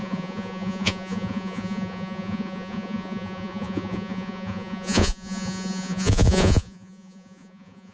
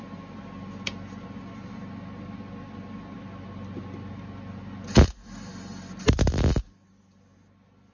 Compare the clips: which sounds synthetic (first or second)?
first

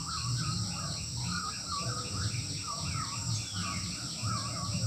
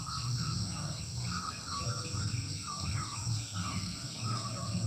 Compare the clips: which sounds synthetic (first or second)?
second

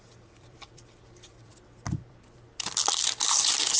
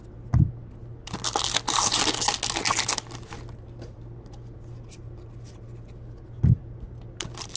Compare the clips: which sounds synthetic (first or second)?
first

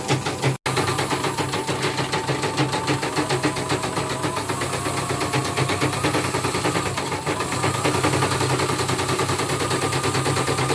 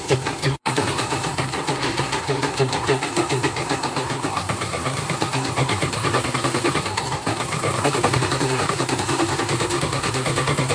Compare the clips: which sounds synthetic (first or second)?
second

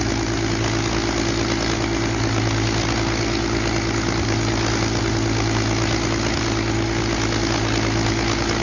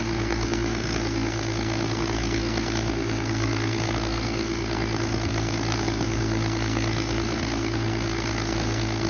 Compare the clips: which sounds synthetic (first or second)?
second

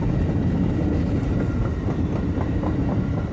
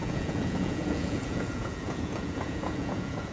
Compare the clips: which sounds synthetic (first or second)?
second